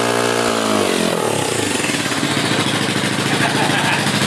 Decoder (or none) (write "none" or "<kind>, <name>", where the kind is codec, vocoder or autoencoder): none